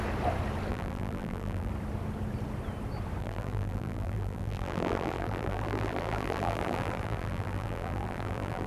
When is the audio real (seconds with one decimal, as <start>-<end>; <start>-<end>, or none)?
0.0-0.7; 1.7-3.2